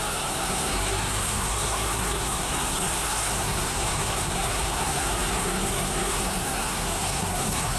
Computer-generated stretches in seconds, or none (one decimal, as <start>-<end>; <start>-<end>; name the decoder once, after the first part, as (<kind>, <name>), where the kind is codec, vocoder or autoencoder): 0.0-7.8 (codec, SNAC)